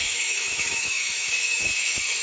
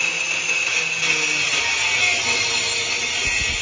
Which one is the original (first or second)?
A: second